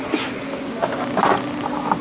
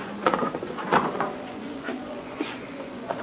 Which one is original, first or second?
first